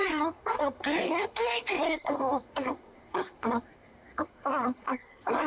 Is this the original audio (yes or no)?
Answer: no